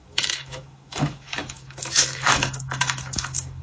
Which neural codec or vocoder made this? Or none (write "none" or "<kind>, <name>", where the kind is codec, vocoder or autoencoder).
autoencoder, DAC-VAE